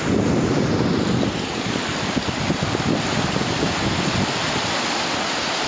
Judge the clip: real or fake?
real